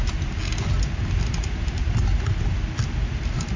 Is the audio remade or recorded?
recorded